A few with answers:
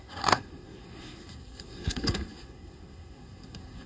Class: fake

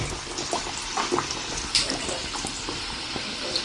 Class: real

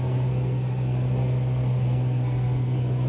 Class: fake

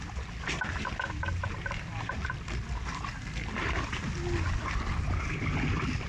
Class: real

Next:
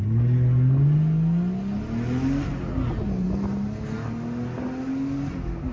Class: real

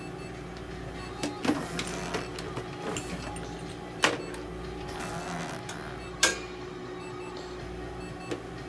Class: real